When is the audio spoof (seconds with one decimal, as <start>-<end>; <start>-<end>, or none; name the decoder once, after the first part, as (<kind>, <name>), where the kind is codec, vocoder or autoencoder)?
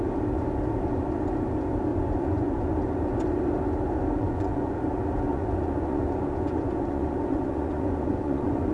1.9-2.7 (vocoder, Vocos); 4.2-4.8; 5.3-8.7